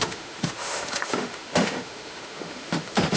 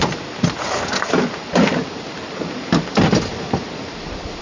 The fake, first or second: first